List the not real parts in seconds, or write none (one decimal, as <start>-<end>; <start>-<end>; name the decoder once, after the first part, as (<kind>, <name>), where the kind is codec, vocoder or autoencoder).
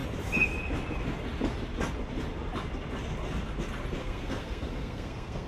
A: 4.0-5.5 (codec, SNAC)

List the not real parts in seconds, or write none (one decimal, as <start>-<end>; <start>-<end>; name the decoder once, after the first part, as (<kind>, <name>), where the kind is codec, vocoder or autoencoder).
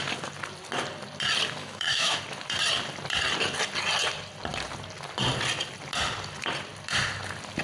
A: 1.6-2.2 (autoencoder, DAC-VAE)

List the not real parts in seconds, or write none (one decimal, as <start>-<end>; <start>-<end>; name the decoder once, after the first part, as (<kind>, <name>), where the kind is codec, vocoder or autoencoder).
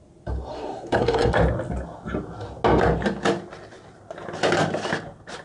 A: 0.5-1.3 (codec, SNAC)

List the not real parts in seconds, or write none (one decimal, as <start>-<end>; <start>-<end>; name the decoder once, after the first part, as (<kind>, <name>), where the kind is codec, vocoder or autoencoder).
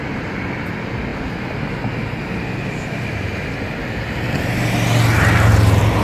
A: none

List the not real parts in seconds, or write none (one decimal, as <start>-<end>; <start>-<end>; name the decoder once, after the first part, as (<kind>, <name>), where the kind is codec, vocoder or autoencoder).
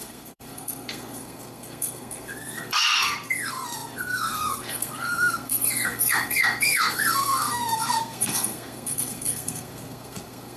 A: 0.0-10.6 (codec, SNAC)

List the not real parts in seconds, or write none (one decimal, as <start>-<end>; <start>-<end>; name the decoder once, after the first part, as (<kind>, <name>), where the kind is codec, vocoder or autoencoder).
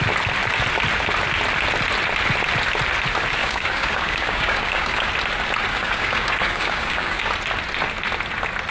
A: 3.4-5.1 (codec, DAC); 5.7-7.3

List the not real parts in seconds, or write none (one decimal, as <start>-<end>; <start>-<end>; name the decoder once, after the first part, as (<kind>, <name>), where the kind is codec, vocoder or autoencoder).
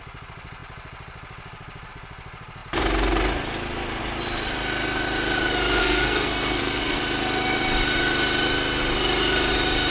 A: 5.8-7.0 (codec, SNAC)